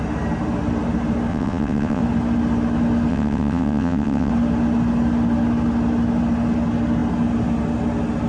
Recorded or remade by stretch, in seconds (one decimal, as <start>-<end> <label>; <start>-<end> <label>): 0.0-1.3 recorded; 1.3-2.0 remade; 2.0-3.1 recorded; 3.1-4.3 remade; 4.3-8.3 recorded